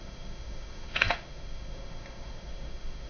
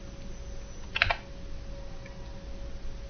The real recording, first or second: second